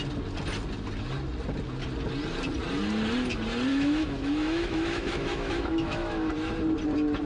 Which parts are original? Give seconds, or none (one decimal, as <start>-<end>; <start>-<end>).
0.0-3.7; 6.3-7.3